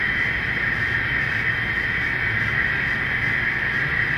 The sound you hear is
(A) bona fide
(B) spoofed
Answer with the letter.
A